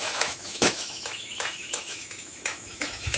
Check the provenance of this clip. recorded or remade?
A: remade